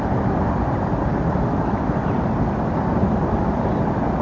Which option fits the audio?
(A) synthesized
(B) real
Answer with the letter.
B